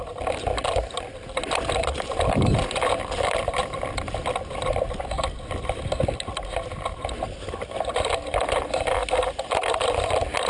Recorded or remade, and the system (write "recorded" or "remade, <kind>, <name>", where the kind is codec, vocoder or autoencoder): recorded